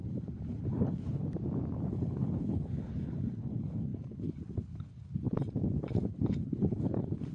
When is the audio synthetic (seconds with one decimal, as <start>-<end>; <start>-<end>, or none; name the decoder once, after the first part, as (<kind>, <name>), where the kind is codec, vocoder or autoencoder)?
0.0-1.2 (codec, HILCodec); 1.9-4.9; 5.8-7.3